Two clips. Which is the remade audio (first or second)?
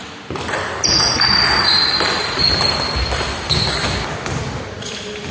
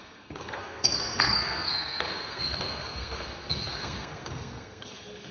second